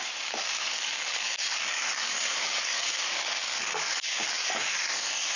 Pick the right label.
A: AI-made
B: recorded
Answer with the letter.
A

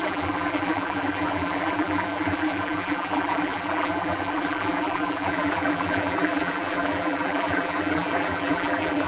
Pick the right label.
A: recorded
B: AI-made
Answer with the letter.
B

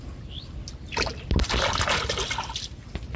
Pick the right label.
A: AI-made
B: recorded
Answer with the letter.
B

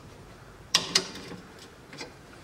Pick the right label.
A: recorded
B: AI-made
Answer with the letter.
B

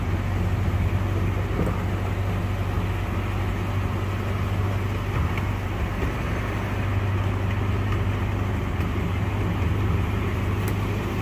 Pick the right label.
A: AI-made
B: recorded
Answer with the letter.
B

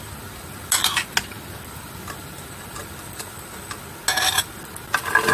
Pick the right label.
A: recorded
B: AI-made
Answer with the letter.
A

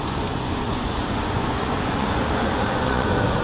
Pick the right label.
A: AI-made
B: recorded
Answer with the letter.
A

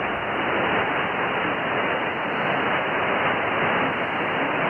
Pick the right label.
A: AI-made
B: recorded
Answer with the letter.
B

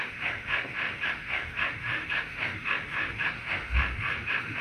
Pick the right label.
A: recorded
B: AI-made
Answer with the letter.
B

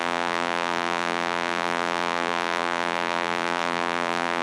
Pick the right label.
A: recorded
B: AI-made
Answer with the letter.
B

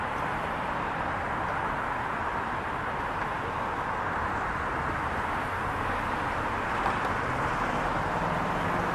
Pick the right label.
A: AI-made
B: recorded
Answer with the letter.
B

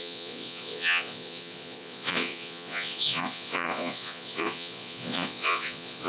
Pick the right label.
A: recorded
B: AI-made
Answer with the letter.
B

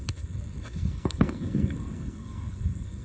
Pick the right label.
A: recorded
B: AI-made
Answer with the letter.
B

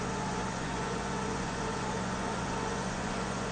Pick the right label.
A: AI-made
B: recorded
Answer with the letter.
A